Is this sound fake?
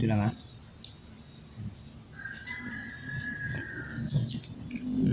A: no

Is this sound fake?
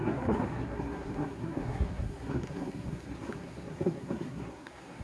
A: yes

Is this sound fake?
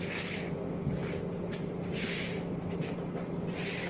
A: no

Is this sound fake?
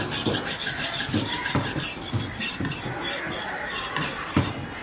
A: no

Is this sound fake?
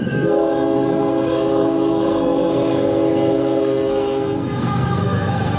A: yes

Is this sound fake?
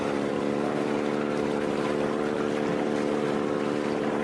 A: no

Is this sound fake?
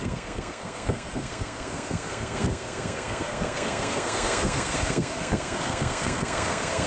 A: yes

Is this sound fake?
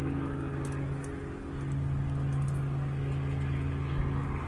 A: no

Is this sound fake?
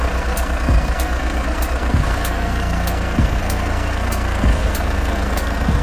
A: yes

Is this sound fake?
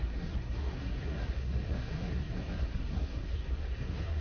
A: yes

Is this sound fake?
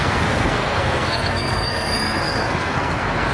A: yes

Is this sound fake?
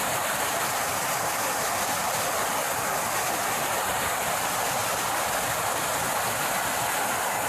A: no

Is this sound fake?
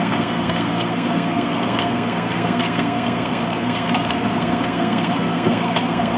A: yes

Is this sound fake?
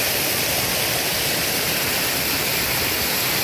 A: no